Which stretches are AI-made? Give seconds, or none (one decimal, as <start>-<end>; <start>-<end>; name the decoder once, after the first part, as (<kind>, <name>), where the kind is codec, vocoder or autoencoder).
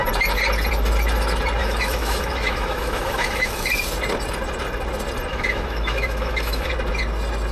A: 1.6-3.7 (autoencoder, DAC-VAE); 5.3-6.7